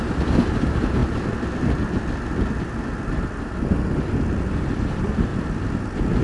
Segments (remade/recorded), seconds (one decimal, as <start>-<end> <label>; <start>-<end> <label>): 0.0-1.0 remade; 1.0-4.6 recorded; 4.6-5.3 remade; 5.3-6.2 recorded